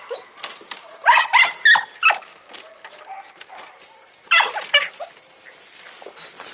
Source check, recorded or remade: recorded